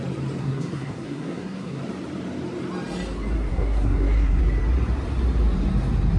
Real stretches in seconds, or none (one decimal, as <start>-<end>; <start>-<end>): 0.0-0.4; 1.8-3.5; 4.4-6.2

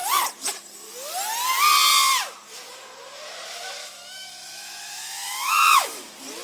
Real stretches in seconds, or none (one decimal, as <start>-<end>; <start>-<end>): 0.0-3.8; 6.0-6.4